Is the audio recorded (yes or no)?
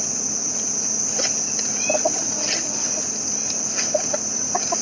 yes